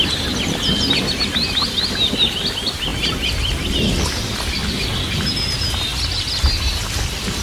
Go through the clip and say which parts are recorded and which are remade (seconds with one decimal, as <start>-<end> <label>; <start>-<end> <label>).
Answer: 0.0-7.4 recorded